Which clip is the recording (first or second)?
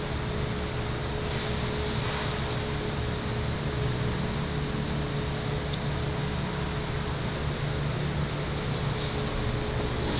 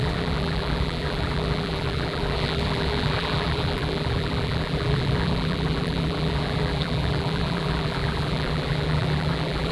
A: first